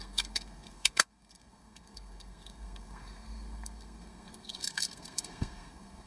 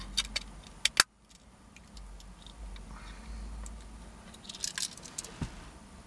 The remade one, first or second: first